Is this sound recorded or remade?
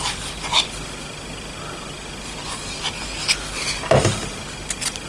recorded